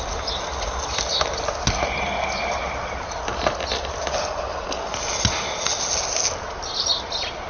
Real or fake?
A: real